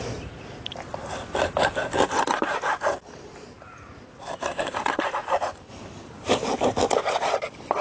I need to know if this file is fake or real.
fake